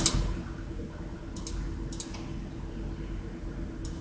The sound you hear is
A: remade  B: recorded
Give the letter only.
B